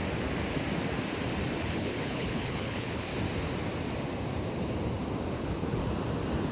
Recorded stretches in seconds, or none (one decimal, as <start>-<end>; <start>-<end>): 0.0-1.5; 3.1-5.3; 5.8-6.5